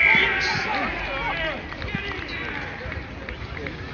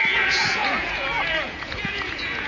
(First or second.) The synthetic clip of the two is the second